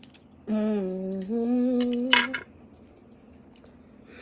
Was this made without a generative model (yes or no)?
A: yes